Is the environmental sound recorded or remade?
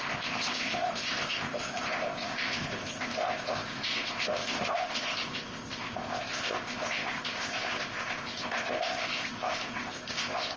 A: remade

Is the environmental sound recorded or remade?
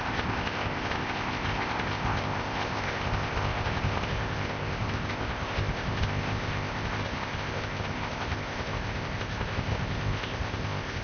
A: remade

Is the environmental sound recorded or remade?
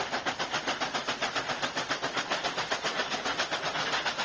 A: recorded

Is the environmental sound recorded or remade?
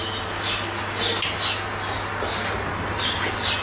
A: recorded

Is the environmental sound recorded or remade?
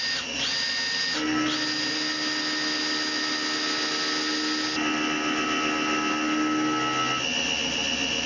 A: recorded